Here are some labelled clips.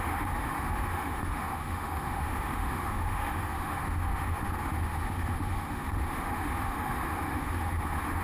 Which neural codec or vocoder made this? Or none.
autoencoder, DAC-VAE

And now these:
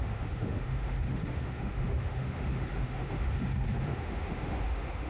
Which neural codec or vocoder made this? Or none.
autoencoder, DAC-VAE